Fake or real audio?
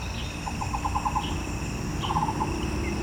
real